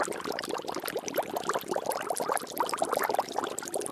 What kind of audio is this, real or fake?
real